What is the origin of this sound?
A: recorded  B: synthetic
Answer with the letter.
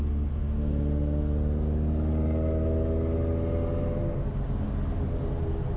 A